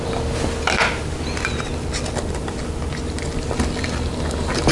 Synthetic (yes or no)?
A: no